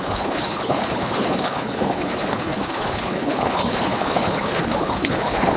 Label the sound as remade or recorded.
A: remade